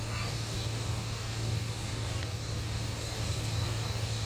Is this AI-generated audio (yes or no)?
yes